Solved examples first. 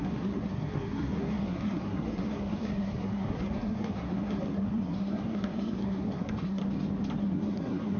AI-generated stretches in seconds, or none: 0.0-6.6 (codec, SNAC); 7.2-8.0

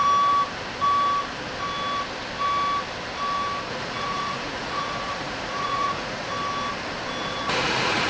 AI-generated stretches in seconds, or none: 3.7-6.3 (vocoder, Vocos); 7.2-8.1

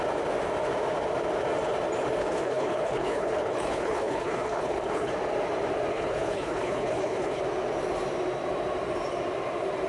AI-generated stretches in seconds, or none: 2.2-5.1 (codec, HILCodec); 5.9-7.4

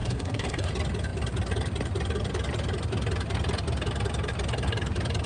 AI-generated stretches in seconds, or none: 0.0-0.7 (codec, SNAC)

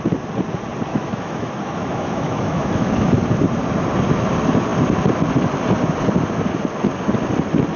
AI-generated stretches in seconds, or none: 0.9-2.9 (autoencoder, DAC-VAE)